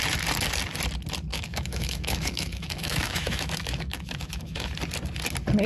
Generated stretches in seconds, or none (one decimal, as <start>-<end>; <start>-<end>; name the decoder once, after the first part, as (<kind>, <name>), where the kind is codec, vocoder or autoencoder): 1.3-4.7 (autoencoder, DAC-VAE)